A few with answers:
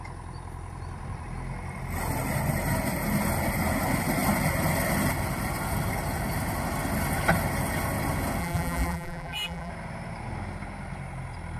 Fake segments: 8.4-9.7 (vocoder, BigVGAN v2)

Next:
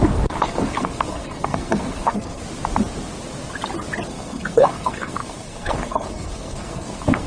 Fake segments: 0.0-2.4 (codec, SNAC); 4.1-7.3